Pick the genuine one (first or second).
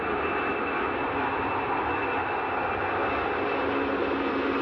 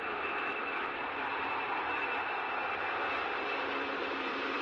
first